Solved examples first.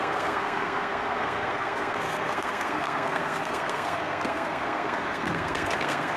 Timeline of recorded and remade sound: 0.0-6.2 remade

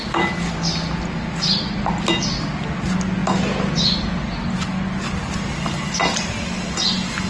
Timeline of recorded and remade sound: 0.0-7.3 recorded

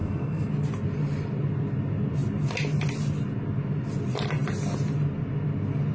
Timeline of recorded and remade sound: 0.0-0.5 remade; 0.5-5.9 recorded

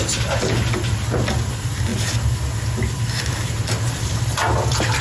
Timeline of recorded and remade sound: 0.0-5.0 recorded

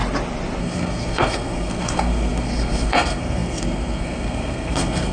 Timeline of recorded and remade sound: 0.0-0.6 recorded; 0.6-5.1 remade

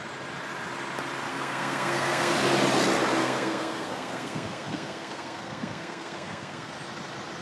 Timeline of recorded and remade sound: 0.0-1.3 recorded; 1.3-2.3 remade; 2.3-3.2 recorded; 3.2-6.7 remade; 6.7-7.4 recorded

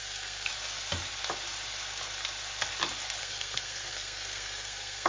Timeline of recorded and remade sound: 0.0-0.5 remade; 0.5-3.2 recorded; 3.2-5.1 remade

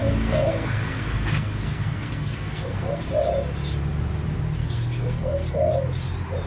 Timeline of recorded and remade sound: 0.0-3.0 remade; 3.0-4.6 recorded; 4.6-5.7 remade; 5.7-6.5 recorded